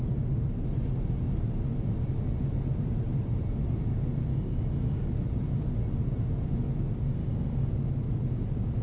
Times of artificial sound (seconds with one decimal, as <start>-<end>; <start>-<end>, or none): 4.3-5.1; 7.2-7.7